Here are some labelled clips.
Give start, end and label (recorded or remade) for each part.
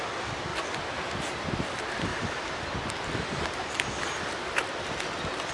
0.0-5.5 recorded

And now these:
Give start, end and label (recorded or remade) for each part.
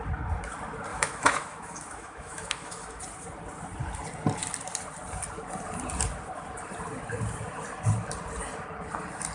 0.0-0.9 recorded; 0.9-3.0 remade; 3.0-9.3 recorded